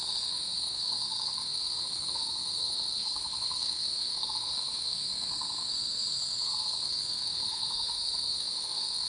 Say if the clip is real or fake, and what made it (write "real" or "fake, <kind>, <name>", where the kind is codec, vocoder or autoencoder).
fake, codec, SNAC